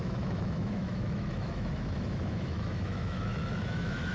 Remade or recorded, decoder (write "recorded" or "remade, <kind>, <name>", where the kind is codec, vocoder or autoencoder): remade, autoencoder, DAC-VAE